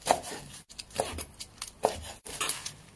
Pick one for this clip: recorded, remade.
recorded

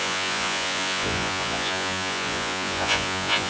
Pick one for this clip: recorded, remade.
remade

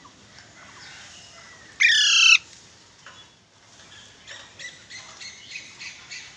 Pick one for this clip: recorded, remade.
recorded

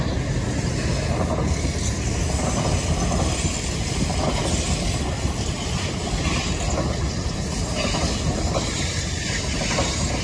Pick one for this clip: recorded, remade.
recorded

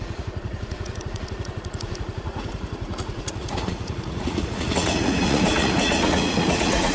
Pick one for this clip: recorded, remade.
remade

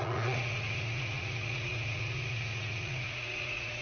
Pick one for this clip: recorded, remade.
remade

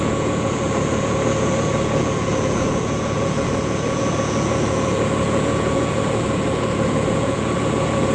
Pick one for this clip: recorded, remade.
remade